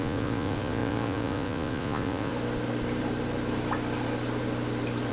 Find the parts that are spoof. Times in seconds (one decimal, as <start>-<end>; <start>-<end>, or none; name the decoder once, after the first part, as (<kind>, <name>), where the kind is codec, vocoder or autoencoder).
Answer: 0.0-2.3 (vocoder, Vocos)